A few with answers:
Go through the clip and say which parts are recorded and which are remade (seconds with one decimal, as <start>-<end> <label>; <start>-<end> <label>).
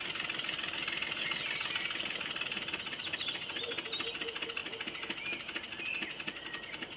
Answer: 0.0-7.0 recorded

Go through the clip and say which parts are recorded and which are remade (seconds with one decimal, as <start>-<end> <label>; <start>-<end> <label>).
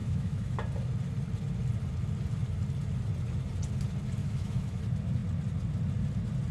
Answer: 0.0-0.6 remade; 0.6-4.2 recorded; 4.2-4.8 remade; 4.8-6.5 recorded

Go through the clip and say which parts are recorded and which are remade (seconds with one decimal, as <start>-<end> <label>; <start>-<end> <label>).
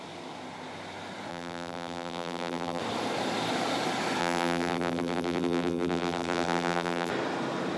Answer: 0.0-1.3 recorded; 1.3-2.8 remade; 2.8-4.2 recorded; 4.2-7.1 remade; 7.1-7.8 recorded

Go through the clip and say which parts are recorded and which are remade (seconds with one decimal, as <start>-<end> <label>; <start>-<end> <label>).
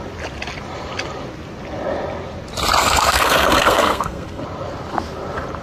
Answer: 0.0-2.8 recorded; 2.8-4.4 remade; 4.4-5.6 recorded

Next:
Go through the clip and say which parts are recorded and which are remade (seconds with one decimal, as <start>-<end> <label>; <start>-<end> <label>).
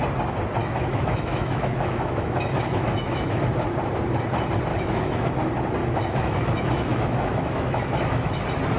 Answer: 0.0-0.6 recorded; 0.6-3.4 remade; 3.4-4.7 recorded; 4.7-5.3 remade; 5.3-5.8 recorded; 5.8-8.4 remade; 8.4-8.8 recorded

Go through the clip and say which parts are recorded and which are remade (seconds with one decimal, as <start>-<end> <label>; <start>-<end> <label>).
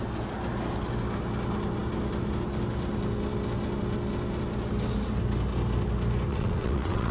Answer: 0.0-6.3 recorded; 6.3-7.1 remade